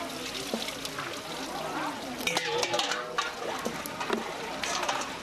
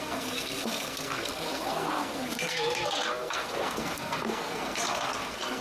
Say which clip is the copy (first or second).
second